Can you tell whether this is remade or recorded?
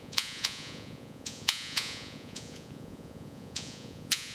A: remade